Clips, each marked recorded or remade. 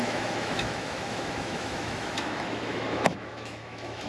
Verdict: remade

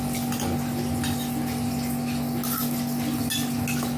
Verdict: recorded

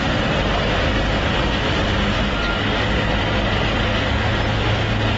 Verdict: recorded